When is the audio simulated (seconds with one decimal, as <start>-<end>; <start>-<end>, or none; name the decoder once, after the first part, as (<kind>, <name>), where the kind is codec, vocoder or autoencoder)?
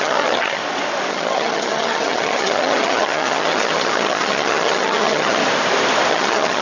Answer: 0.0-0.6 (vocoder, HiFi-GAN); 1.1-5.4; 6.1-6.6